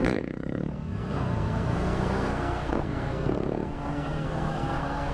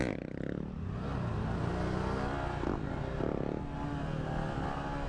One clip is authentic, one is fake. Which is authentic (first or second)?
second